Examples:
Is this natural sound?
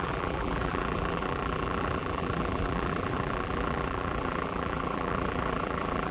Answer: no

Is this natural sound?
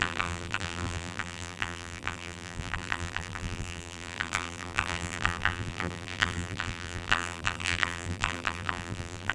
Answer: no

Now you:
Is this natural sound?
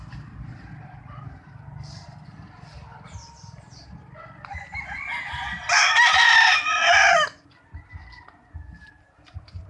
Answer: yes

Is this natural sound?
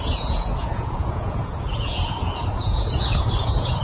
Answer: no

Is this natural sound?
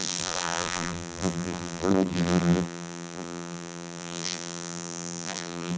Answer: no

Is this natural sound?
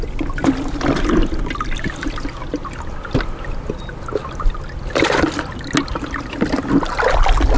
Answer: yes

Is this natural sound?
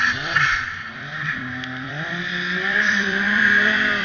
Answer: no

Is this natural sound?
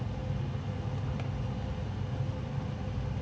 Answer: yes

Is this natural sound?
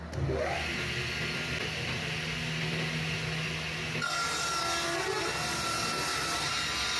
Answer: yes